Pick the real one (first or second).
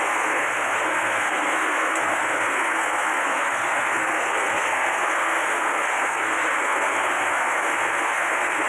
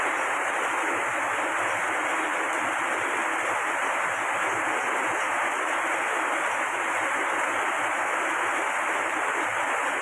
second